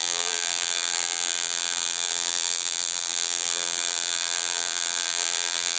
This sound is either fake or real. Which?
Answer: fake